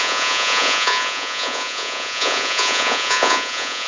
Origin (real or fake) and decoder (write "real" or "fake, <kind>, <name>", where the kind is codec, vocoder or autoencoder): fake, vocoder, Vocos